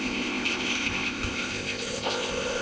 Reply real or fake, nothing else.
fake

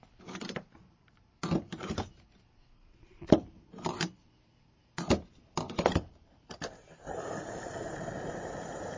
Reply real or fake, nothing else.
fake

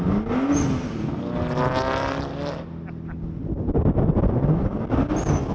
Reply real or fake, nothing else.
real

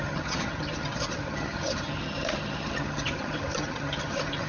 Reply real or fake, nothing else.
fake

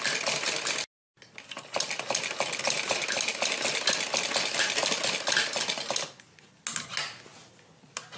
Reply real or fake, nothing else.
real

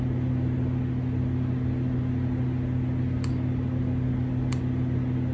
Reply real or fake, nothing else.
real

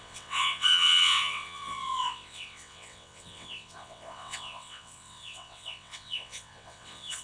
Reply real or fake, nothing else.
fake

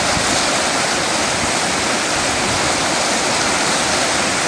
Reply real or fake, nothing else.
real